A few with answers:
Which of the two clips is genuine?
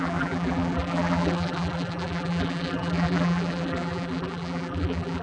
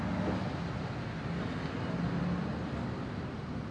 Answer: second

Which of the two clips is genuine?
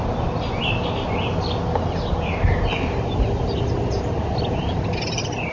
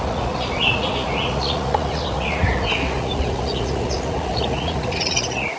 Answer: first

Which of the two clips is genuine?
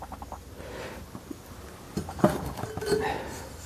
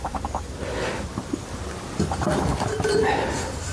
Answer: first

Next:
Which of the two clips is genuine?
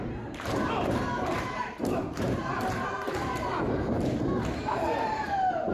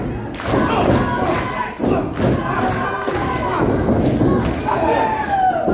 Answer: second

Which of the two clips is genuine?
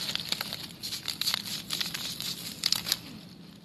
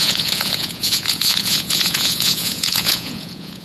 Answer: first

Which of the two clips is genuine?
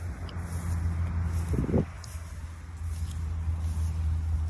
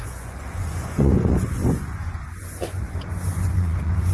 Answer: first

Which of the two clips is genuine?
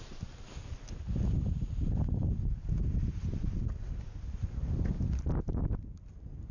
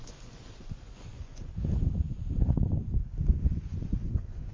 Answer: first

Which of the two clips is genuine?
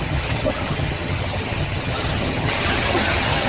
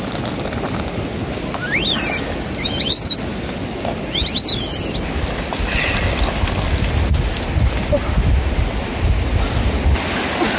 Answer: second